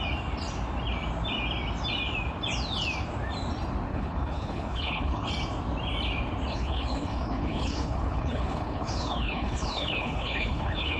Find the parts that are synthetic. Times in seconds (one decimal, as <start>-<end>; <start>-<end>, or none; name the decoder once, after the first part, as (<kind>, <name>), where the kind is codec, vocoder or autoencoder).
3.9-5.3 (codec, HILCodec); 6.5-11.0